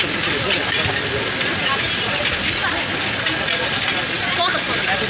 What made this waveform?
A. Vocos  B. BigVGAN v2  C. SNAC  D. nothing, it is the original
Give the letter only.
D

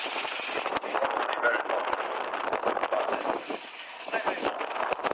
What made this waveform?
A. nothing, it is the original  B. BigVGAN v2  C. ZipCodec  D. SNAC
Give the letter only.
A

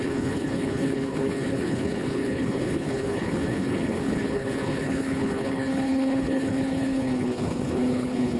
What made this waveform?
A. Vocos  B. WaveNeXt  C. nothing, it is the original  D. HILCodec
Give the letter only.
D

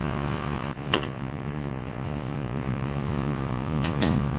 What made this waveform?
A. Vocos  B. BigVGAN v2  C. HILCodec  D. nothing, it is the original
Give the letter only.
A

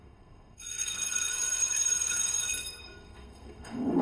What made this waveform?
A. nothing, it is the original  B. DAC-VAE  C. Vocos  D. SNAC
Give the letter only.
D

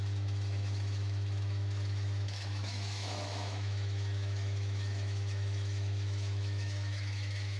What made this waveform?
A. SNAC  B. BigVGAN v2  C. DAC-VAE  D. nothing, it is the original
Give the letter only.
C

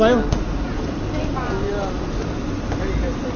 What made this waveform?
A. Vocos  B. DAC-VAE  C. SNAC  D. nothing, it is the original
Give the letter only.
D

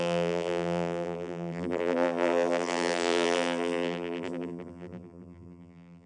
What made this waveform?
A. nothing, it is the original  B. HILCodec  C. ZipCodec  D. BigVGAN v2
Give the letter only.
D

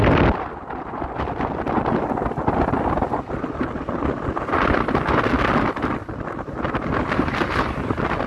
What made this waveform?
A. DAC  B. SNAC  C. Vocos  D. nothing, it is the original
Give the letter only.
D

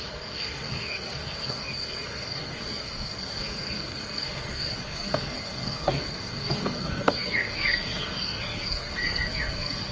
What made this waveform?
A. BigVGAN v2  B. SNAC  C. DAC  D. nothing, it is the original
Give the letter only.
B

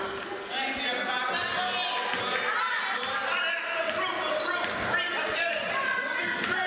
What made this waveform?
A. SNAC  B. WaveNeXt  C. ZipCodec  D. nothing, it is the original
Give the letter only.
D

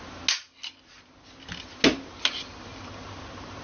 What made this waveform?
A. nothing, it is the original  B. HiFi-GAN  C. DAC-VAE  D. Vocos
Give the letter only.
A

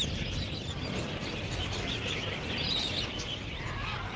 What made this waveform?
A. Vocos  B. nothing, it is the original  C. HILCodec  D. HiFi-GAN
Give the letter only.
B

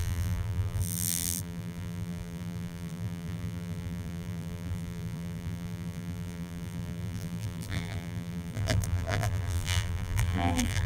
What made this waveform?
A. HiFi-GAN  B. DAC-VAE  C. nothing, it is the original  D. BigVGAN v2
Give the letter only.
D